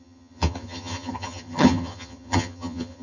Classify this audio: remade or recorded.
remade